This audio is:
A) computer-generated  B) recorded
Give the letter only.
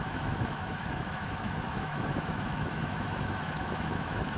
A